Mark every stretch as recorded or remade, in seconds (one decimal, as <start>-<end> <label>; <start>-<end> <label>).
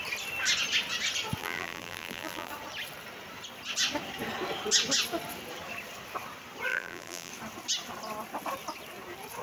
0.0-1.4 recorded; 1.4-2.5 remade; 2.5-6.7 recorded; 6.7-7.3 remade; 7.3-9.4 recorded